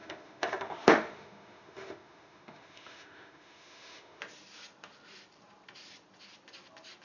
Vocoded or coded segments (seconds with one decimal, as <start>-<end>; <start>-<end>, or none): 0.0-4.2